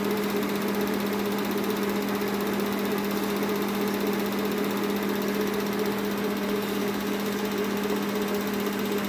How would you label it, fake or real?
real